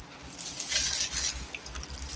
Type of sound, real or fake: real